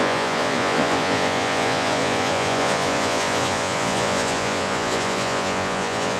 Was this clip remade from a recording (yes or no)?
yes